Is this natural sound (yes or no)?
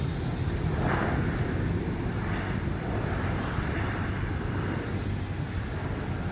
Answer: yes